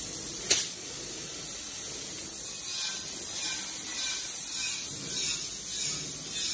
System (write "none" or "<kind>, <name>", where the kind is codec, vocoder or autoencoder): none